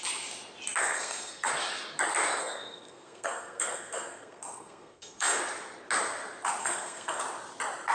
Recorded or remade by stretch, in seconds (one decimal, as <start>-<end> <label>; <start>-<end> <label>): 0.0-0.8 recorded; 0.8-1.5 remade; 1.5-2.4 recorded; 2.4-5.4 remade; 5.4-6.6 recorded; 6.6-7.2 remade; 7.2-7.9 recorded